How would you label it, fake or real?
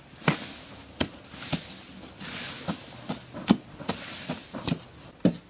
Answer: real